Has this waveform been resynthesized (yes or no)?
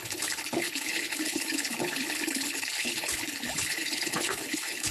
yes